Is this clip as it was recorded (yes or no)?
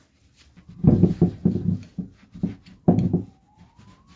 yes